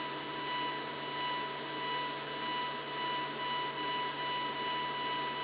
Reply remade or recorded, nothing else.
recorded